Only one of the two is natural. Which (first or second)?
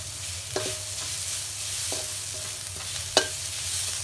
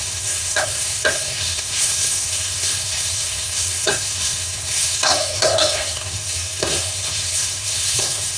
first